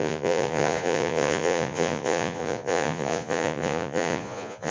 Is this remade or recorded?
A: remade